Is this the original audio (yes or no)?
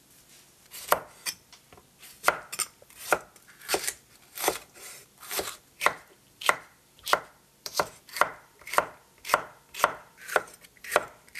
no